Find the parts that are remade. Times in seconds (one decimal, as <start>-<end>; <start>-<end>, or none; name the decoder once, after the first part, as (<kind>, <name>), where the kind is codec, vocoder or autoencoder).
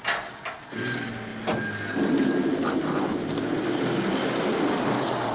none